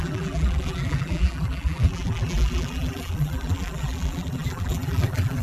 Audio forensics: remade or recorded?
remade